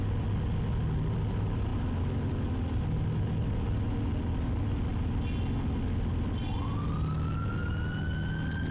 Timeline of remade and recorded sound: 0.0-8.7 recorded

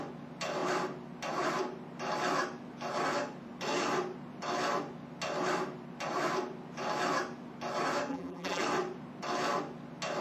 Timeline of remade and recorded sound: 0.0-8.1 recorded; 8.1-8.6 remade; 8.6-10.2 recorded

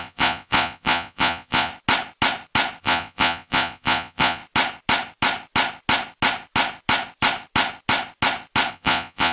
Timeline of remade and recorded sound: 0.0-1.7 remade; 1.7-2.8 recorded; 2.8-4.4 remade; 4.4-8.7 recorded; 8.7-9.3 remade

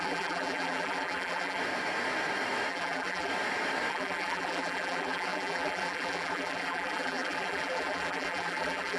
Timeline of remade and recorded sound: 0.0-1.6 remade; 1.6-2.7 recorded; 2.7-3.3 remade; 3.3-3.9 recorded; 3.9-9.0 remade

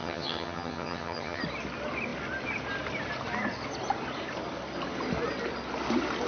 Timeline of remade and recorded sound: 0.0-1.4 remade; 1.4-6.3 recorded